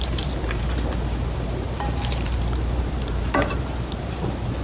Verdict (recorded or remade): remade